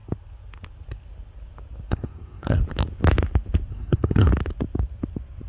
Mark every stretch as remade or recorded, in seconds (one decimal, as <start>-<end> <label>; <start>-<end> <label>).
0.0-1.9 recorded; 1.9-2.6 remade; 2.6-3.7 recorded; 3.7-4.3 remade; 4.3-5.5 recorded